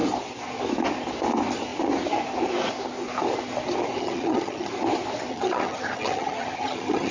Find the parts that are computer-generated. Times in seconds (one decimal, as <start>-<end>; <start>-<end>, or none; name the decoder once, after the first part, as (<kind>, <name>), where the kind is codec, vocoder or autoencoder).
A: 4.0-4.7 (vocoder, HiFi-GAN); 5.3-7.1